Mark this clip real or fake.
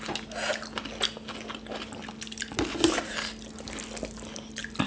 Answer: real